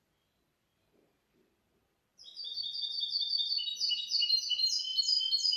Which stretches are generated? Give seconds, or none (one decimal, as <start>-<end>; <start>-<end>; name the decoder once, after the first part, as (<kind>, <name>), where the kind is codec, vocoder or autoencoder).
0.0-4.9 (vocoder, BigVGAN v2)